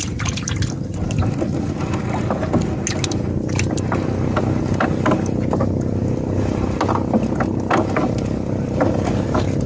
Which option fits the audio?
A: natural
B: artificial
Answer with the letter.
A